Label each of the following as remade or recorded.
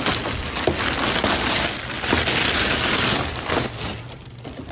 recorded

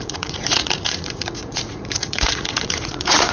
remade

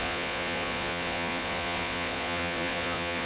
remade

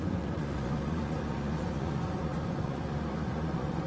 remade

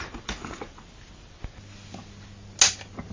recorded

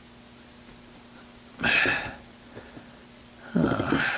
recorded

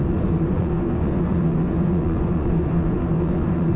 remade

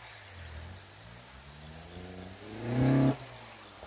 recorded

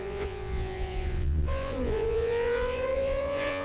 remade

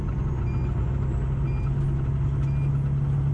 recorded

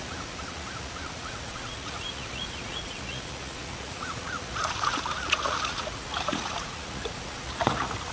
remade